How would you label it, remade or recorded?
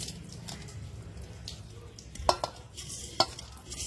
recorded